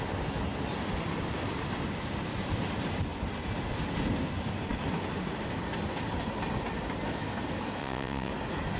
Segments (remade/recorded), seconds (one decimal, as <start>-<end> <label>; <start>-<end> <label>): 0.0-7.8 recorded; 7.8-8.3 remade; 8.3-8.8 recorded